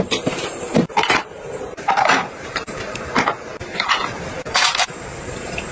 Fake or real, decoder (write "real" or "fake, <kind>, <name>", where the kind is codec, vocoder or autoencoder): fake, vocoder, BigVGAN v2